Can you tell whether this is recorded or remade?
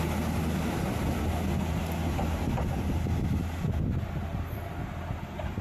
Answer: recorded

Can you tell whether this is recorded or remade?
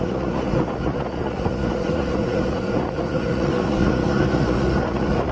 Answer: remade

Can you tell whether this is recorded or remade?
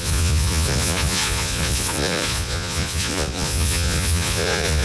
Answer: remade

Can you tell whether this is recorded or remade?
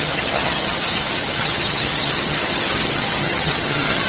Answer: remade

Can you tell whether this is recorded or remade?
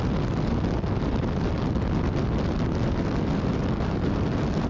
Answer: recorded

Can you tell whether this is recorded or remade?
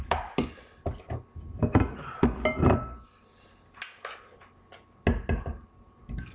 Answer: recorded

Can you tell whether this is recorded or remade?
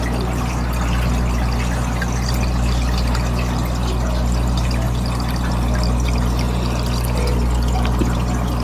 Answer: recorded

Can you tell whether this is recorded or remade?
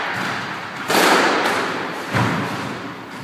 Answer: recorded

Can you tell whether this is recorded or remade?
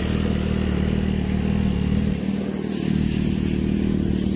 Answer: recorded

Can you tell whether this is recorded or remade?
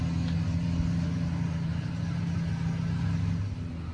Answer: recorded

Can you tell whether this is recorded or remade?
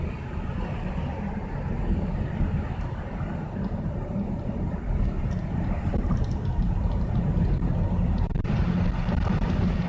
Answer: recorded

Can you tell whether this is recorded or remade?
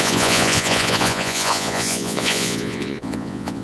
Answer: remade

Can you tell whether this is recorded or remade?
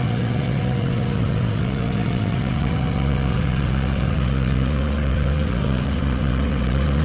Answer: remade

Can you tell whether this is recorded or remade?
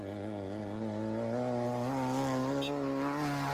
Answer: recorded